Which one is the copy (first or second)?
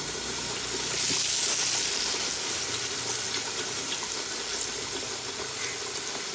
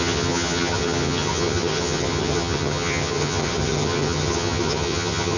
second